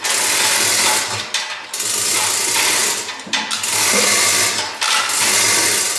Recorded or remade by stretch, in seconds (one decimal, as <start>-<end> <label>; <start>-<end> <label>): 0.0-6.0 recorded